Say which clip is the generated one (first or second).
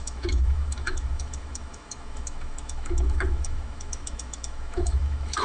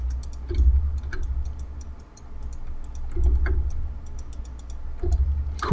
first